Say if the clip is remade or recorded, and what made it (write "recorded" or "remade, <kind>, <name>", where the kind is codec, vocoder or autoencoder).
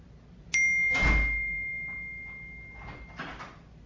recorded